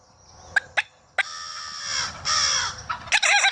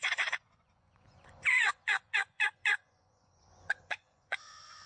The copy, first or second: second